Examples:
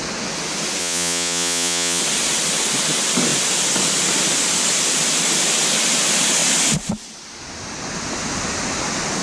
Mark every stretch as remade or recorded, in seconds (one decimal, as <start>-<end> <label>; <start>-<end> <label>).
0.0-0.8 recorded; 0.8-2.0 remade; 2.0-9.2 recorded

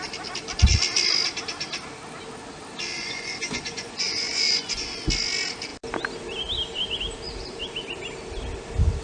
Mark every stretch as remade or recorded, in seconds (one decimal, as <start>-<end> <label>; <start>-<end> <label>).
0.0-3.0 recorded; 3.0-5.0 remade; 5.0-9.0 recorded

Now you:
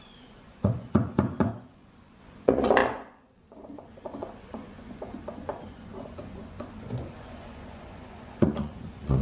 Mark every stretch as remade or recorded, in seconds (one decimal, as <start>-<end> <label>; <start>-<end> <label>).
0.0-9.2 remade

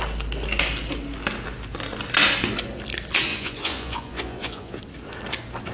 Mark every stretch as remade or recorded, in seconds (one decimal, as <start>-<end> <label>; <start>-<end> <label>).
0.0-3.3 recorded; 3.3-4.8 remade; 4.8-5.7 recorded

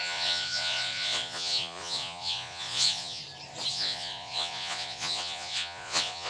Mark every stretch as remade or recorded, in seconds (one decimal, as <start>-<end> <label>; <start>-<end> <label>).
0.0-3.2 remade; 3.2-3.7 recorded; 3.7-6.3 remade

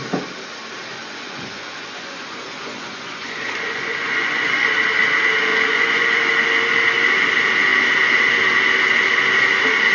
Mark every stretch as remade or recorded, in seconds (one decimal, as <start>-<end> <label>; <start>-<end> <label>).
0.0-0.9 recorded; 0.9-4.7 remade; 4.7-5.5 recorded; 5.5-6.2 remade; 6.2-9.9 recorded

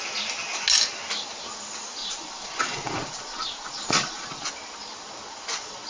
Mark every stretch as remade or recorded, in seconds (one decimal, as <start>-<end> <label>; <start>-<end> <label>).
0.0-2.0 recorded; 2.0-4.5 remade; 4.5-5.9 recorded